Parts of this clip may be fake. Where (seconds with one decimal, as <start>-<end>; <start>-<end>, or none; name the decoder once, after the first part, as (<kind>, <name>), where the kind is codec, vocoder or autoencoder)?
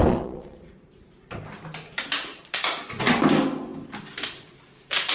0.0-0.6 (vocoder, Vocos); 2.3-3.0